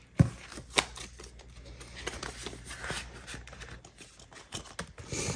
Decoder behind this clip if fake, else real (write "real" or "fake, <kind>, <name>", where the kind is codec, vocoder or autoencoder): real